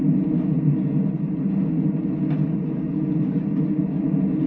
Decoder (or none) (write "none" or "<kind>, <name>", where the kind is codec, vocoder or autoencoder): none